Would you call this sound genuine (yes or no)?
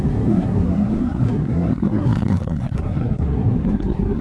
no